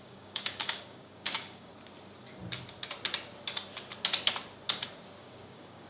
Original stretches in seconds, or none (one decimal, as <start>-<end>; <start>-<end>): 1.7-5.2